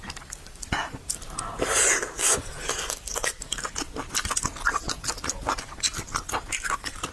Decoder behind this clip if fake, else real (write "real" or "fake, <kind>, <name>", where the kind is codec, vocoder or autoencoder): real